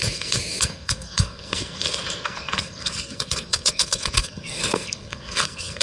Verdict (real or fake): fake